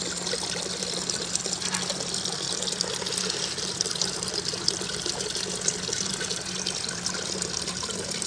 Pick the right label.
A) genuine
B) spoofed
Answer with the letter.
A